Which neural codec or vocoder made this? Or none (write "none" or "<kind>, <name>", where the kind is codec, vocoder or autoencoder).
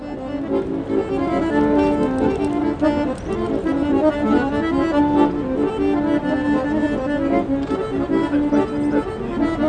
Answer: none